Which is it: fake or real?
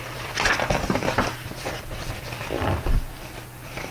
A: fake